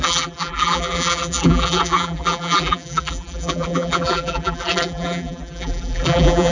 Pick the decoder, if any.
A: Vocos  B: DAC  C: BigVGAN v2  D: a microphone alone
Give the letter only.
C